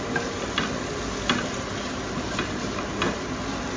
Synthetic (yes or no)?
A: no